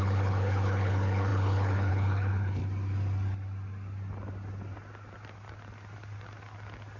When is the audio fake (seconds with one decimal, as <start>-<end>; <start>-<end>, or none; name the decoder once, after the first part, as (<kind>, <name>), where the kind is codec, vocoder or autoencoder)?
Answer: 0.0-2.6 (codec, HILCodec)